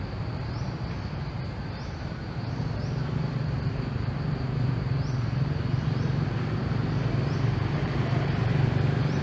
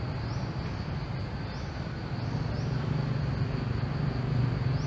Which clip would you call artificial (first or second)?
first